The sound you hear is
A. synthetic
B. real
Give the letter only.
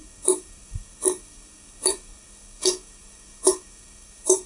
A